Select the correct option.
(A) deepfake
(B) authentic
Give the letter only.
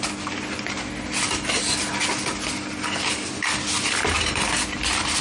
A